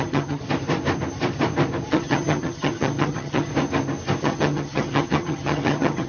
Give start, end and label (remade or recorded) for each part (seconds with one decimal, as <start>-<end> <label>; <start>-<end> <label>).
0.0-0.4 remade; 0.4-1.9 recorded; 1.9-3.5 remade; 3.5-4.2 recorded; 4.2-6.1 remade